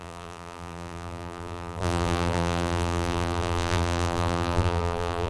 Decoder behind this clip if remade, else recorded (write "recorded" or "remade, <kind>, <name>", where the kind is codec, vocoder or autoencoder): remade, vocoder, BigVGAN v2